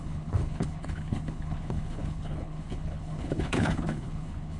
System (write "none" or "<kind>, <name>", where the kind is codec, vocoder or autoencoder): codec, HILCodec